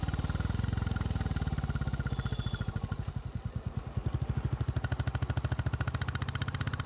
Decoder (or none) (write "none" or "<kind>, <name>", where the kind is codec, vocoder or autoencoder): none